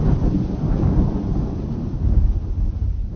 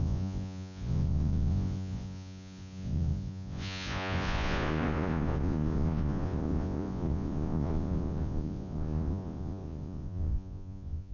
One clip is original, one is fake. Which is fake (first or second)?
second